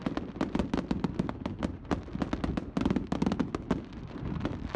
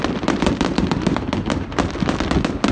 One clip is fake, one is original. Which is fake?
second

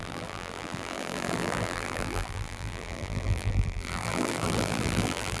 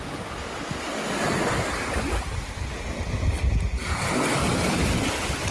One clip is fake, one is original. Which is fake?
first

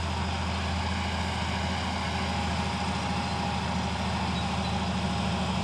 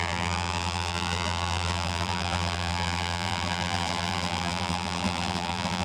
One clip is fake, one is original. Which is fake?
second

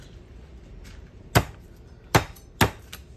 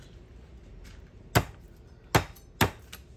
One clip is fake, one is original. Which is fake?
first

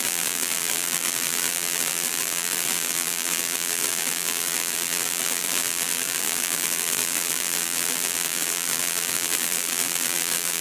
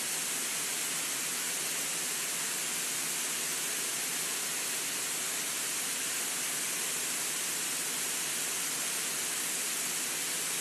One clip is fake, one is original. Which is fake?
first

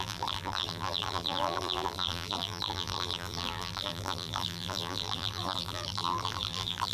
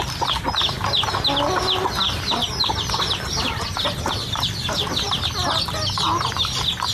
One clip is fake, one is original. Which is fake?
first